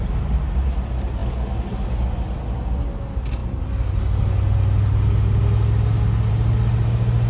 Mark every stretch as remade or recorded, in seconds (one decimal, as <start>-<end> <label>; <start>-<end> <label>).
0.0-7.3 recorded